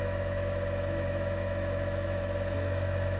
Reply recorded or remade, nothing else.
remade